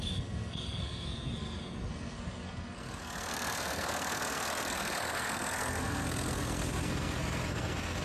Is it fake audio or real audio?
fake